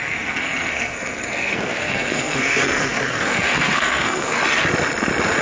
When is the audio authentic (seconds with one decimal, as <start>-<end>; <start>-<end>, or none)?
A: 4.4-5.4

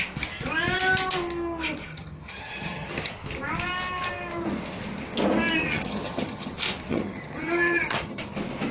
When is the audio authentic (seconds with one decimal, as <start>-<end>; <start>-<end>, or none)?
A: 0.0-1.9; 3.1-5.6; 6.5-6.9; 8.2-8.7